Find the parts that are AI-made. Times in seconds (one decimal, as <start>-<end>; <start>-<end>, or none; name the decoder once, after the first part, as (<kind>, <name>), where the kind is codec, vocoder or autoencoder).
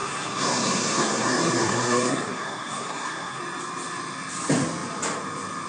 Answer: 0.0-3.4 (codec, SNAC)